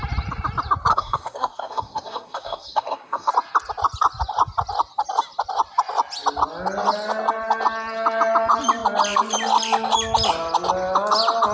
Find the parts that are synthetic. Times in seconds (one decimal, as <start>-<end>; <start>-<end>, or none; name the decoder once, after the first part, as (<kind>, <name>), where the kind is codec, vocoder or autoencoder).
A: 0.9-3.3 (codec, SNAC)